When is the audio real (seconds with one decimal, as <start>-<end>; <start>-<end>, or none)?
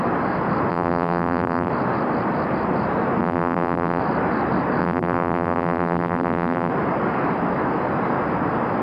0.0-0.7; 1.7-3.2; 4.0-4.8; 6.7-8.8